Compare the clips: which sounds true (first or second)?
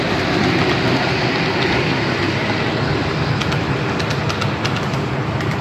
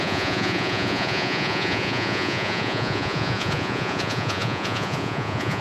first